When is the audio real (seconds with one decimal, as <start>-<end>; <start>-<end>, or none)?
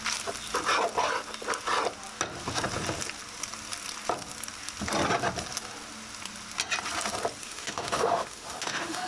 0.0-7.4